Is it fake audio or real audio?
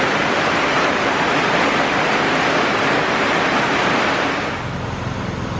real